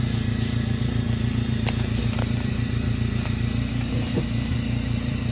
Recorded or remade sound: remade